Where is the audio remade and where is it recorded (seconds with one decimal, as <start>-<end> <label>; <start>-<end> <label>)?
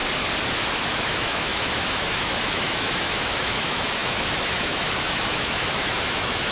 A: 0.0-0.9 recorded; 0.9-6.5 remade